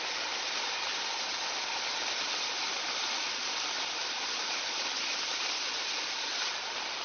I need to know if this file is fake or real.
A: real